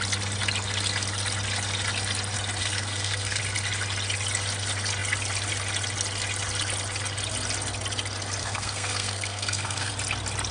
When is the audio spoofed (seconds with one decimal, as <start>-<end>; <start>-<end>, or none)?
2.6-3.4; 8.4-9.9